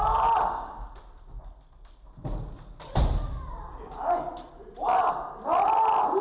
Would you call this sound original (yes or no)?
yes